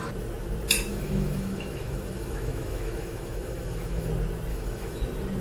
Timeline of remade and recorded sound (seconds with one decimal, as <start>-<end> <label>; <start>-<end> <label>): 0.0-0.9 recorded; 0.9-4.1 remade; 4.1-4.5 recorded; 4.5-5.0 remade; 5.0-5.4 recorded